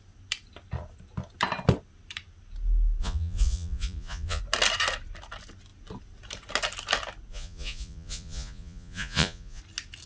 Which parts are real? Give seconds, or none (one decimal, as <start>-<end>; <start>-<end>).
0.0-3.0; 4.4-7.3; 9.6-10.1